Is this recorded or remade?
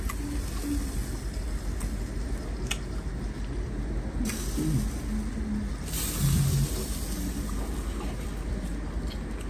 recorded